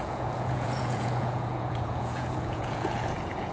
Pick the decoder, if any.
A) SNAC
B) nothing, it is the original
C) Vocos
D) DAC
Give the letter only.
C